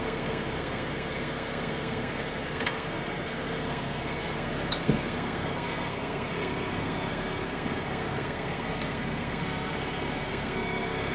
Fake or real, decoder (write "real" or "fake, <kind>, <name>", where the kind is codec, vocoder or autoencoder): fake, codec, SNAC